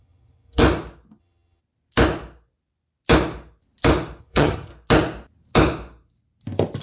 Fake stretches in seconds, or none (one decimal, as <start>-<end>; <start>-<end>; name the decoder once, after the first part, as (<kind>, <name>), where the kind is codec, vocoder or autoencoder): 0.0-0.6 (vocoder, HiFi-GAN); 1.2-1.6; 4.2-4.7